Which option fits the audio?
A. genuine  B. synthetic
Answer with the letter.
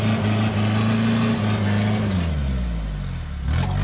A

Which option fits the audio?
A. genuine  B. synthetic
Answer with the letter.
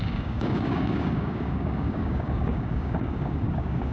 B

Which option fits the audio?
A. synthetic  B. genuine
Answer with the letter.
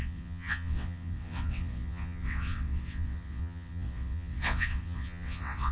A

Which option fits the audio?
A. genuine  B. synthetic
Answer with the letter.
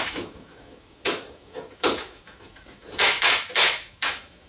B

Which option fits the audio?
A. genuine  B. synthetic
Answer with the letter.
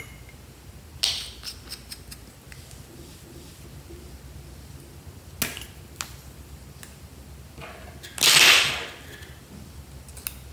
A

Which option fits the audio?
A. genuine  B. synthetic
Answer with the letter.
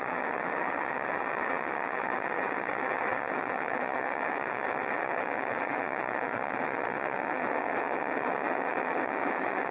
B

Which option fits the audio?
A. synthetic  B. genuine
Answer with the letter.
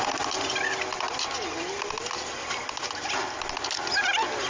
B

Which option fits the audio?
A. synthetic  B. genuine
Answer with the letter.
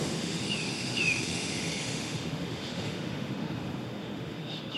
A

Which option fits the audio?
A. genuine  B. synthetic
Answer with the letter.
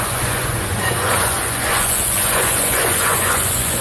B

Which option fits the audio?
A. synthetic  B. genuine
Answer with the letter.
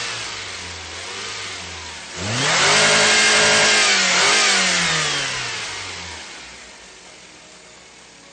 B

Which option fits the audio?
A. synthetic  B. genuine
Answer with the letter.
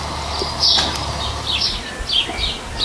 B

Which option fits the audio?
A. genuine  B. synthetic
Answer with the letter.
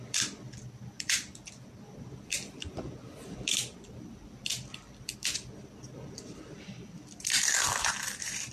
B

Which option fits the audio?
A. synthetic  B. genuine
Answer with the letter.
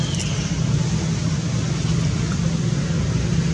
B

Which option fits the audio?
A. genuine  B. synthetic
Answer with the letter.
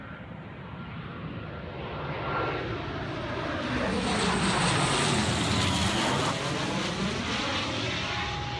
A